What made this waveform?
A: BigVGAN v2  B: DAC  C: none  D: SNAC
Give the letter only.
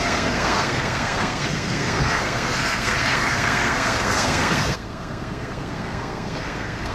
D